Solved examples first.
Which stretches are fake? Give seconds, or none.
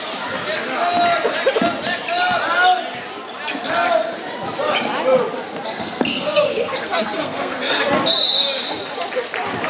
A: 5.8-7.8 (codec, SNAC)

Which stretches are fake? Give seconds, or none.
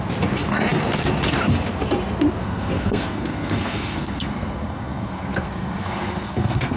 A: 2.4-6.8 (codec, SNAC)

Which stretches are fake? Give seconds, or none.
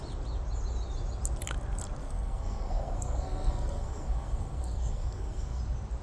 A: 2.0-5.6 (codec, SNAC)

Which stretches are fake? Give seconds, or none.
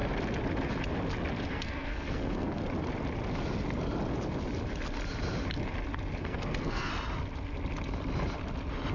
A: 1.5-2.6 (codec, SNAC); 6.2-6.9